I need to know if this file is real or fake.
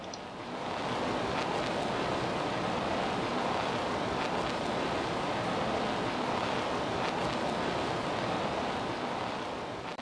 real